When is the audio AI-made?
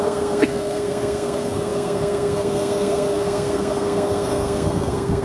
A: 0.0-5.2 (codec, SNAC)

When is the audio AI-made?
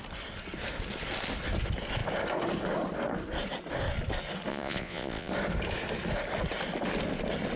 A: 4.5-5.3 (vocoder, Vocos)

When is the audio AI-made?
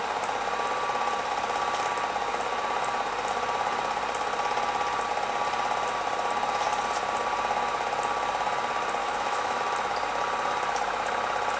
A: 9.0-9.6 (autoencoder, DAC-VAE)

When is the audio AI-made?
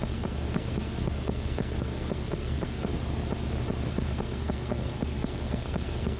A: 0.0-2.9 (codec, SNAC); 3.9-6.2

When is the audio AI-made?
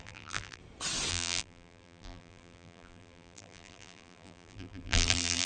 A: 0.0-0.6 (vocoder, BigVGAN v2); 1.1-5.5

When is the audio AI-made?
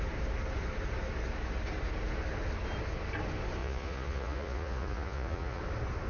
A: 3.6-5.6 (vocoder, Vocos)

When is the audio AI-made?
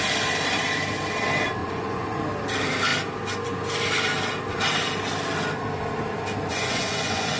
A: 1.6-2.2 (vocoder, Vocos); 6.5-7.4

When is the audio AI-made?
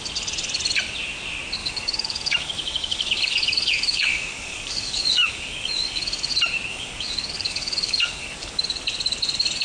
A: 1.6-6.3 (codec, DAC); 6.7-8.6